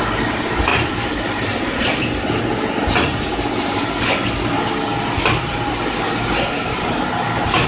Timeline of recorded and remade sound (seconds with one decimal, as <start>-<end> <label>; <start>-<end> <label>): 0.0-0.7 recorded; 0.7-2.4 remade; 2.4-6.7 recorded; 6.7-7.3 remade; 7.3-7.7 recorded